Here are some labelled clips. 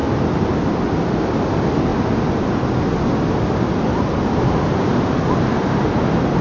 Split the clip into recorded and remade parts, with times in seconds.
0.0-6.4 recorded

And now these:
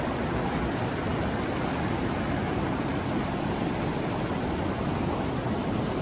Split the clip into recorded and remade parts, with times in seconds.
0.0-6.0 recorded

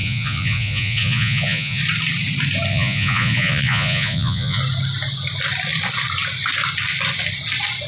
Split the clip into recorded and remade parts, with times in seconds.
0.0-1.8 remade; 1.8-2.7 recorded; 2.7-4.6 remade; 4.6-7.9 recorded

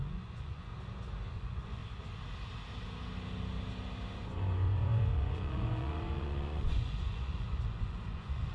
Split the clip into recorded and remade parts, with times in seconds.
0.0-0.7 remade; 0.7-1.3 recorded; 1.3-1.8 remade; 1.8-4.1 recorded; 4.1-8.5 remade